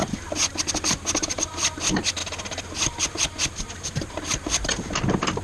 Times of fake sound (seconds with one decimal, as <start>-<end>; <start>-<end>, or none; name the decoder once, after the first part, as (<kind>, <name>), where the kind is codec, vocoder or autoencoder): none